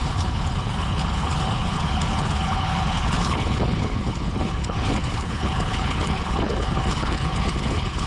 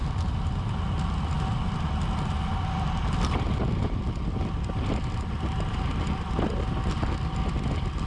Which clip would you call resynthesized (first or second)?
first